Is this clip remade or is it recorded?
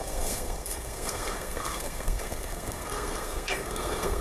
remade